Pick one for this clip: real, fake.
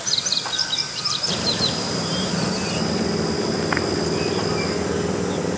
real